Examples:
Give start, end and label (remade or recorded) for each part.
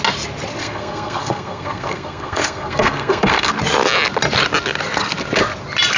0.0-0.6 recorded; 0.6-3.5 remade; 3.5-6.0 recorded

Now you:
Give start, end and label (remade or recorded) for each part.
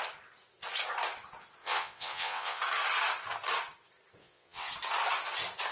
0.0-1.6 recorded; 1.6-2.6 remade; 2.6-4.2 recorded; 4.2-4.7 remade; 4.7-5.7 recorded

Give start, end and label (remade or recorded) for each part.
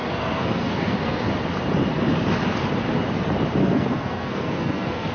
0.0-1.3 remade; 1.3-3.6 recorded; 3.6-5.1 remade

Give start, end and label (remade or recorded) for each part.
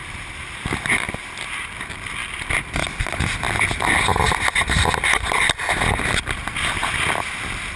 0.0-7.8 recorded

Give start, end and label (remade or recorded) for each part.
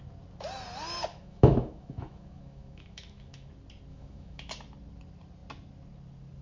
0.0-1.1 recorded; 1.1-3.5 remade; 3.5-3.9 recorded; 3.9-4.5 remade; 4.5-6.4 recorded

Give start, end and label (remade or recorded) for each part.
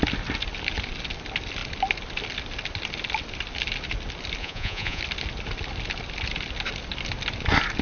0.0-4.4 recorded; 4.4-5.0 remade; 5.0-7.8 recorded